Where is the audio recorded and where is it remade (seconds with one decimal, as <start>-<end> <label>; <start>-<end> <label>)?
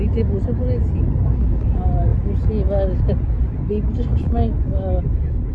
0.0-5.5 recorded